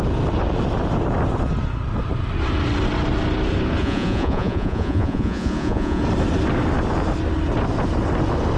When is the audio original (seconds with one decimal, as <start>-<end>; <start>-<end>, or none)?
0.0-3.8; 6.0-8.6